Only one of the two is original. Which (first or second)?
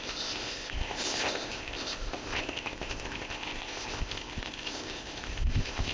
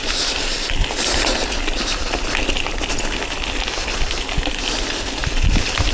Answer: second